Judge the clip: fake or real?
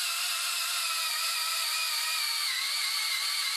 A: real